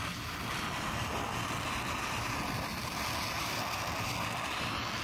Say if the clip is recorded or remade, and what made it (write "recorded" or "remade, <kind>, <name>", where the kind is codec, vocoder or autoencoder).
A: recorded